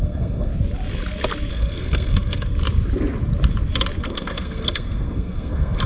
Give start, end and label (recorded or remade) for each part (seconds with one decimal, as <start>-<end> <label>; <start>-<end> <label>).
0.0-0.5 remade; 0.5-1.5 recorded; 1.5-2.5 remade; 2.5-4.0 recorded; 4.0-5.9 remade